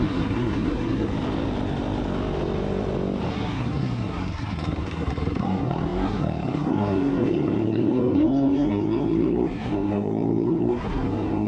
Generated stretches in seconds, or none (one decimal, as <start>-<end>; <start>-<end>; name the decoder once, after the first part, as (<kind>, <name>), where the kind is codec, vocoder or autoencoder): 0.0-1.1 (codec, SNAC); 3.3-11.5